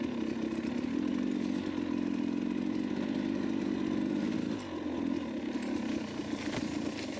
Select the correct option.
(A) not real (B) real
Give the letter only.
B